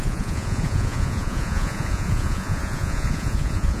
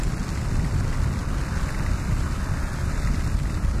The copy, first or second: first